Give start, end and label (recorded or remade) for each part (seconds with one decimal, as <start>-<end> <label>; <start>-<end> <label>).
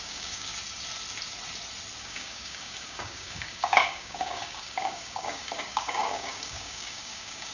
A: 0.0-0.5 remade; 0.5-2.0 recorded; 2.0-7.5 remade